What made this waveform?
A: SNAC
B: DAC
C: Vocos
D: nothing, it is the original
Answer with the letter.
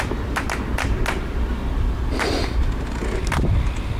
D